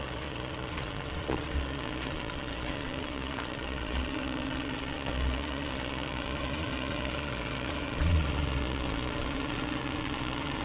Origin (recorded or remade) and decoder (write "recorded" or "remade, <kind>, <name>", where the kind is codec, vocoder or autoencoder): remade, vocoder, Vocos